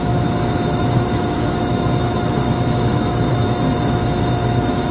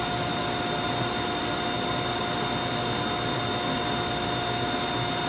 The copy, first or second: first